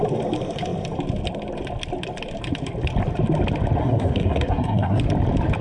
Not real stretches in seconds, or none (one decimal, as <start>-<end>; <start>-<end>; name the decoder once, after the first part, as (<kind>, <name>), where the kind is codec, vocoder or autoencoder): 3.8-5.0 (codec, SNAC)